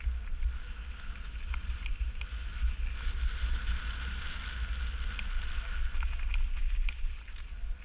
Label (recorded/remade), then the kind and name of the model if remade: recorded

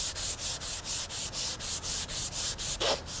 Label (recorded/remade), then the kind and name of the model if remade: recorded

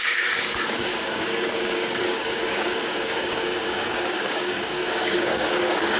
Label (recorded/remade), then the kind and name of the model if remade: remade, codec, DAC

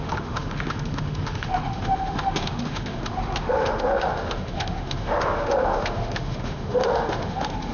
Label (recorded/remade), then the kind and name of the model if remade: remade, autoencoder, DAC-VAE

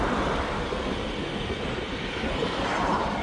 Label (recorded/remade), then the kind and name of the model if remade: recorded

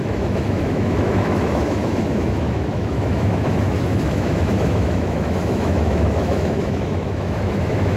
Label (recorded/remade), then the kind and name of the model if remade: remade, autoencoder, DAC-VAE